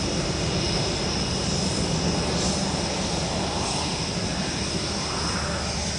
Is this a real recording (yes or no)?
yes